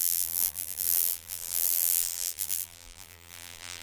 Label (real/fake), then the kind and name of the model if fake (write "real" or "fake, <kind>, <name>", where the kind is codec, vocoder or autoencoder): fake, vocoder, BigVGAN v2